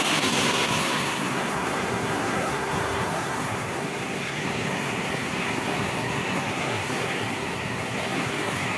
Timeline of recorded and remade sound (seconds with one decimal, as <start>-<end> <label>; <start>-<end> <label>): 0.0-8.8 remade